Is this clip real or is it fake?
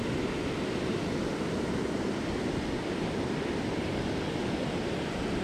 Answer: real